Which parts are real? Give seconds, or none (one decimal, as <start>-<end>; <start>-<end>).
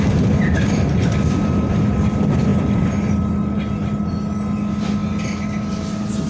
0.0-6.3